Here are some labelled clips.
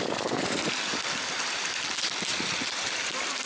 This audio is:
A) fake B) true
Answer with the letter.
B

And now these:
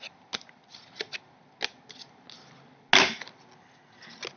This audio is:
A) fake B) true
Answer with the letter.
B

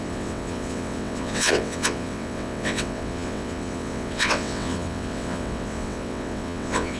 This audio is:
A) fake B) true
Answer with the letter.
A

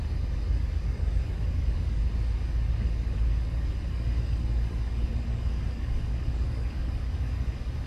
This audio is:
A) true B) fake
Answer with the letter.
B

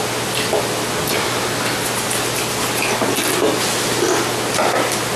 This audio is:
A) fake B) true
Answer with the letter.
B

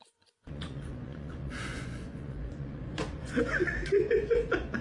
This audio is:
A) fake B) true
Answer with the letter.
A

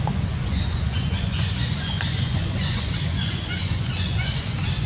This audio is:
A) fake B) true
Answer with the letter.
A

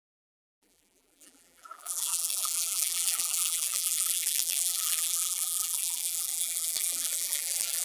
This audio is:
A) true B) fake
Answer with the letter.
B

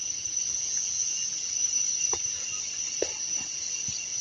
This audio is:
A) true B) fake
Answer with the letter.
A